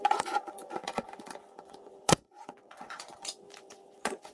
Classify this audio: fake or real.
fake